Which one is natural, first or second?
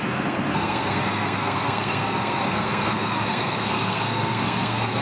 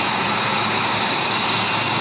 second